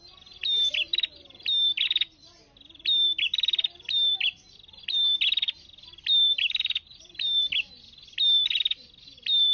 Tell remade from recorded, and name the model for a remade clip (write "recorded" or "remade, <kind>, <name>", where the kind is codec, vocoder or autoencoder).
recorded